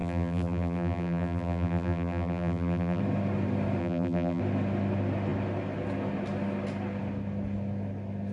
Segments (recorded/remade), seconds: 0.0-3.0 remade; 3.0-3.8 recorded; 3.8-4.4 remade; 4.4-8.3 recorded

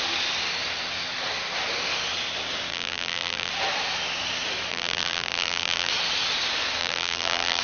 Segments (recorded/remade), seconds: 0.0-2.7 recorded; 2.7-3.5 remade; 3.5-4.7 recorded; 4.7-5.9 remade; 5.9-6.8 recorded; 6.8-7.6 remade

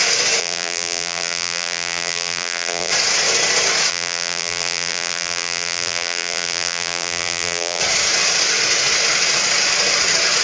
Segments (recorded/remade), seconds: 0.0-0.4 recorded; 0.4-2.9 remade; 2.9-3.9 recorded; 3.9-7.8 remade; 7.8-10.4 recorded

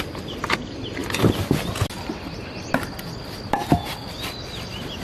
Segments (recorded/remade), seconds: 0.0-5.0 recorded

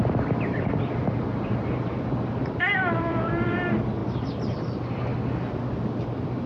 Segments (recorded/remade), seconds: 0.0-5.1 remade; 5.1-6.0 recorded; 6.0-6.5 remade

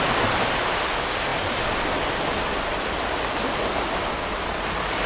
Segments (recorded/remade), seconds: 0.0-1.3 recorded; 1.3-4.4 remade; 4.4-5.1 recorded

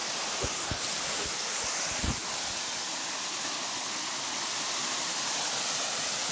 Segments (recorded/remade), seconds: 0.0-6.3 recorded

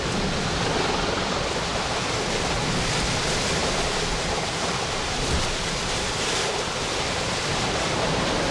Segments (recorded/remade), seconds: 0.0-3.6 recorded; 3.6-8.0 remade; 8.0-8.5 recorded